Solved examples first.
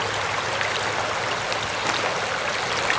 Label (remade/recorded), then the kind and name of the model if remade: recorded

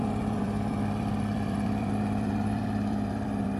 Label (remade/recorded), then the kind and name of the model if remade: remade, vocoder, BigVGAN v2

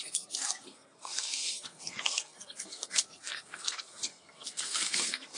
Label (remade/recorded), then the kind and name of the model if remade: remade, codec, SNAC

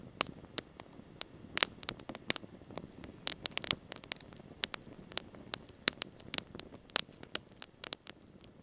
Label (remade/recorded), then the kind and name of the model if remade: recorded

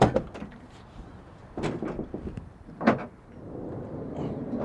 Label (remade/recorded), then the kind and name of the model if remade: remade, vocoder, BigVGAN v2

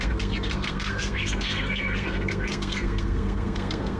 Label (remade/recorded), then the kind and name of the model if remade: remade, codec, SNAC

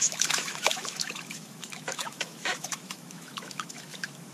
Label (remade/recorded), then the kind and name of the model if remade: remade, autoencoder, DAC-VAE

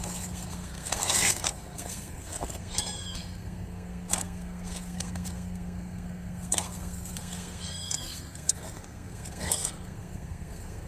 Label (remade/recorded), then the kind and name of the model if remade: remade, codec, SNAC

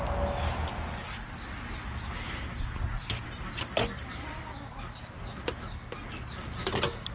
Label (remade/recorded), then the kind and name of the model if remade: recorded